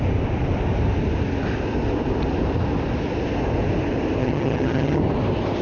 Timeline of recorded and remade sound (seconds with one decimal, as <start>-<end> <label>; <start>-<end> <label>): 0.0-4.2 recorded; 4.2-5.0 remade; 5.0-5.6 recorded